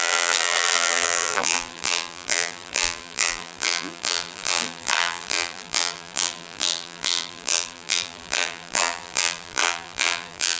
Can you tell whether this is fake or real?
fake